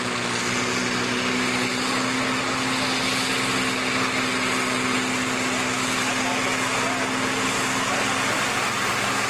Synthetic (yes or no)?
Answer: no